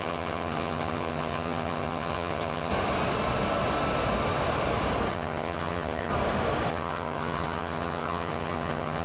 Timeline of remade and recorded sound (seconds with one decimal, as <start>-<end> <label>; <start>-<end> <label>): 0.0-2.7 remade; 2.7-5.1 recorded; 5.1-6.1 remade; 6.1-6.7 recorded; 6.7-9.0 remade